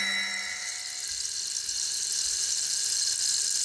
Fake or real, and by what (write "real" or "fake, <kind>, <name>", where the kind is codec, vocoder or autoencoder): real